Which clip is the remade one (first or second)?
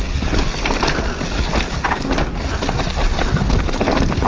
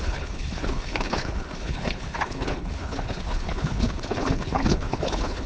second